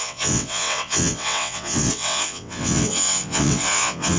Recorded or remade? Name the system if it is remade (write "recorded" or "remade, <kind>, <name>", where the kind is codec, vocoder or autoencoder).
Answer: remade, vocoder, WaveNeXt